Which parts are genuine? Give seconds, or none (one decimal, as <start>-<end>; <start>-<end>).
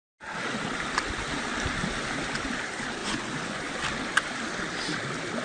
0.0-3.0; 3.6-5.4